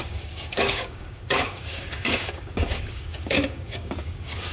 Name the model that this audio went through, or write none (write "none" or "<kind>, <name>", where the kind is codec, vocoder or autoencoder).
codec, DAC